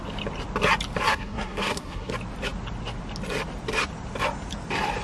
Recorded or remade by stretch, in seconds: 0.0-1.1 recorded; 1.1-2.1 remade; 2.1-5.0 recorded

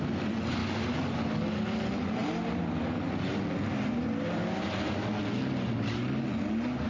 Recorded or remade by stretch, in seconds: 0.0-6.9 recorded

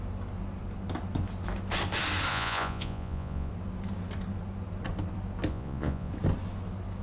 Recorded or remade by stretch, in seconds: 0.0-2.3 recorded; 2.3-3.5 remade; 3.5-5.5 recorded; 5.5-6.1 remade; 6.1-7.0 recorded

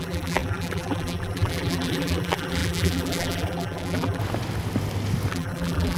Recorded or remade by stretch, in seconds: 0.0-4.2 remade; 4.2-5.3 recorded; 5.3-6.0 remade

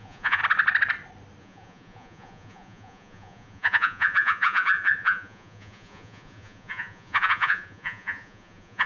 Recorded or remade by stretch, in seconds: 0.0-0.4 remade; 0.4-1.4 recorded; 1.4-8.9 remade

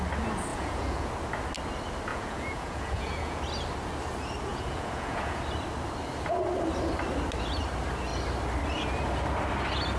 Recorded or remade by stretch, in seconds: 0.0-0.5 recorded; 0.5-1.1 remade; 1.1-2.1 recorded; 2.1-3.4 remade; 3.4-4.5 recorded; 4.5-5.4 remade; 5.4-10.0 recorded

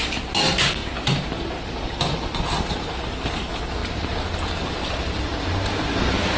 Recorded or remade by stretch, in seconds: 0.0-6.4 recorded